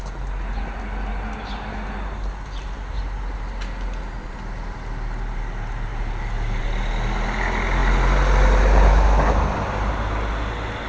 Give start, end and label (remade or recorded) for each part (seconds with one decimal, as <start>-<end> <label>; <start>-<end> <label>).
0.0-10.9 recorded